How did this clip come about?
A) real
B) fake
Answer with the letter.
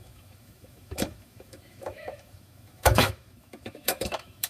B